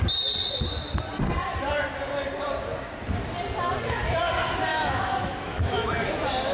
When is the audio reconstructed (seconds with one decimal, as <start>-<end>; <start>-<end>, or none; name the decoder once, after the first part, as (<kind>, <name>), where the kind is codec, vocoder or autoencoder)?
4.7-5.9 (autoencoder, DAC-VAE)